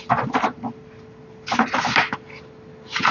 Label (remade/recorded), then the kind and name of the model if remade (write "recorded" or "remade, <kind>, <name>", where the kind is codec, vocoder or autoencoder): recorded